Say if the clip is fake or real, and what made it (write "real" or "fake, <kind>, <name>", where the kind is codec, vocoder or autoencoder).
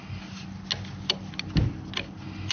real